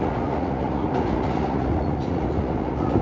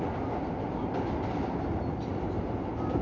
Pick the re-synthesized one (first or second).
first